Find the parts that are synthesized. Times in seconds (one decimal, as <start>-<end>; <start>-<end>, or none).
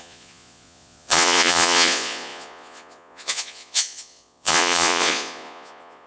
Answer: 0.0-6.1